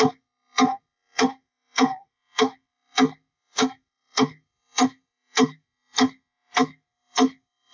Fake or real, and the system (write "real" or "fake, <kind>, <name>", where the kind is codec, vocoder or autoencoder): fake, codec, SNAC